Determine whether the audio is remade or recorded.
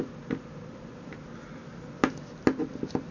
recorded